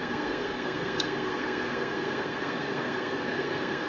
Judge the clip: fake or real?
fake